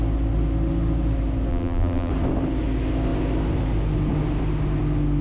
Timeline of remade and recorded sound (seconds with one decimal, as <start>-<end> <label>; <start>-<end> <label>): 0.0-1.5 recorded; 1.5-2.1 remade; 2.1-5.2 recorded